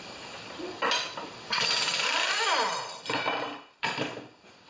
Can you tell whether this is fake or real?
fake